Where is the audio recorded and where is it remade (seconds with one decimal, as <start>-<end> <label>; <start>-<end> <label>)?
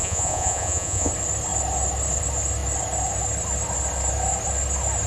0.0-1.1 remade; 1.1-5.1 recorded